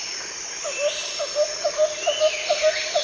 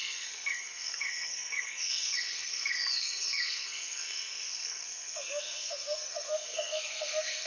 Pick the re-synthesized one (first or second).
second